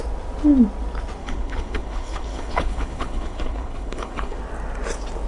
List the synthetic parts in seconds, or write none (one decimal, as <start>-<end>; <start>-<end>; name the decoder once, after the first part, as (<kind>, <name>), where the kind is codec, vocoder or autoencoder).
1.2-4.4 (codec, HILCodec)